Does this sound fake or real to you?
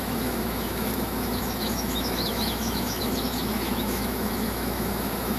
fake